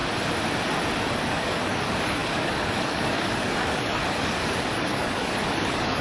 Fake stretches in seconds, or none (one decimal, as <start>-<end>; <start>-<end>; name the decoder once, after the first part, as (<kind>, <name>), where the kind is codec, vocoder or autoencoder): 1.3-6.0 (codec, DAC)